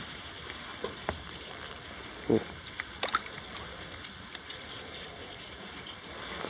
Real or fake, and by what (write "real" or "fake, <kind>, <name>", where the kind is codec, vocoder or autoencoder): real